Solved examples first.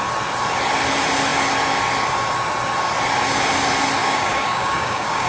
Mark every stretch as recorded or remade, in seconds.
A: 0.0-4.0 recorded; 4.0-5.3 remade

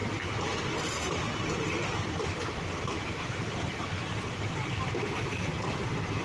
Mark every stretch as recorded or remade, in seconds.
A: 0.0-3.7 remade; 3.7-4.3 recorded; 4.3-5.8 remade; 5.8-6.2 recorded

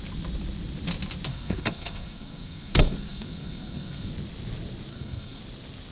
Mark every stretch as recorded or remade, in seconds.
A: 0.0-1.3 recorded; 1.3-4.1 remade; 4.1-4.9 recorded; 4.9-5.4 remade; 5.4-5.9 recorded

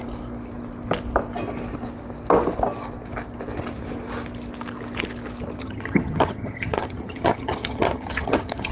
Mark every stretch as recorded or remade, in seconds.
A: 0.0-5.6 recorded; 5.6-8.7 remade